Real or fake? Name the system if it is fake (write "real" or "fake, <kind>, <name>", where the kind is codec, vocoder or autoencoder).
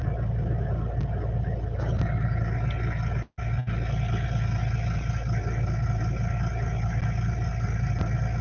real